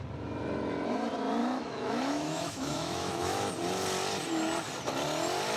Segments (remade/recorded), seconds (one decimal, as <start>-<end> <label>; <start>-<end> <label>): 0.0-1.4 recorded; 1.4-3.5 remade; 3.5-5.6 recorded